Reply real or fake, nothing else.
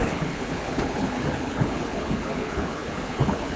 fake